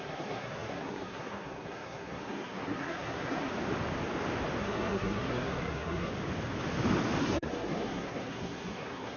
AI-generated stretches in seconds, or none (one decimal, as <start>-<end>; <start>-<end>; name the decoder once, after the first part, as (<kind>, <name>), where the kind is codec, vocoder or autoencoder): 0.0-3.5 (codec, SNAC); 4.6-6.1; 7.2-9.2